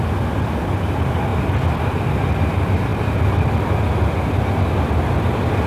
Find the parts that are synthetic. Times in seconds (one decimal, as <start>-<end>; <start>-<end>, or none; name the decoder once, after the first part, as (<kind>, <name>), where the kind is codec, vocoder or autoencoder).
none